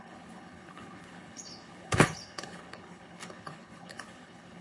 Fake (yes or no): yes